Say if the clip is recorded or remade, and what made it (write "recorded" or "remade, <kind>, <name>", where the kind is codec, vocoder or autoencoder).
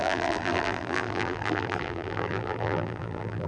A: remade, vocoder, BigVGAN v2